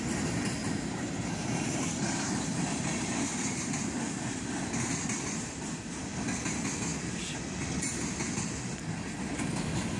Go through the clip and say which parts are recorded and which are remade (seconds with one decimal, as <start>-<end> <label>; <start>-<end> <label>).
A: 0.0-0.6 recorded; 0.6-4.5 remade; 4.5-10.0 recorded